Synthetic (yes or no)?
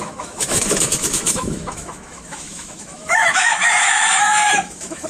yes